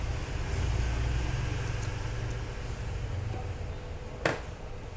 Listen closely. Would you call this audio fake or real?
real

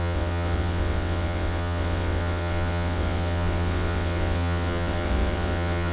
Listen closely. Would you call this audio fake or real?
fake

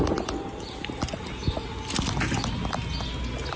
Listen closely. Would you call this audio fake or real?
real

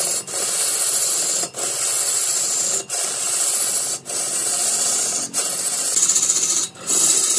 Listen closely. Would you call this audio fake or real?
real